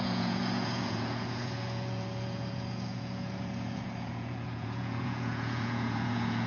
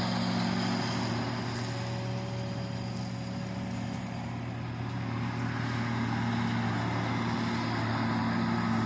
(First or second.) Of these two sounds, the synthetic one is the first